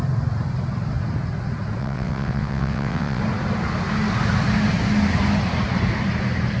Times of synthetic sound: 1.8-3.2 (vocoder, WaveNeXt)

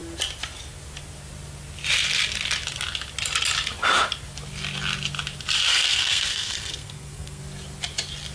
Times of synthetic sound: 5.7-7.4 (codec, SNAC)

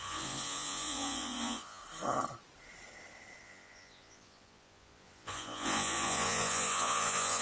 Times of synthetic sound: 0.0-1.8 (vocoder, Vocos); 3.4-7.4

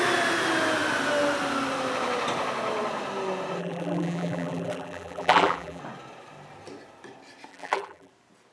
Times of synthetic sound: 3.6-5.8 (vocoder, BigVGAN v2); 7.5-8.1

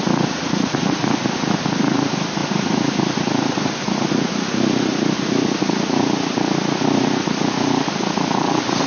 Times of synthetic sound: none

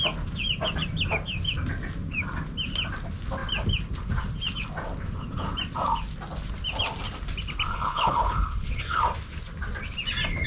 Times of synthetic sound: 7.7-9.0 (codec, HILCodec)